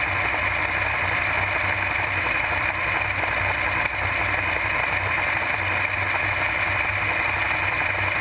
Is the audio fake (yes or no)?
no